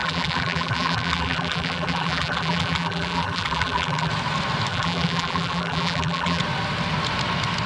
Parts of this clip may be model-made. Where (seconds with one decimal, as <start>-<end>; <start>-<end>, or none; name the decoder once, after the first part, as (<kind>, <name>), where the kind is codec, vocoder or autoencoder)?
0.0-4.1 (vocoder, BigVGAN v2); 4.7-6.4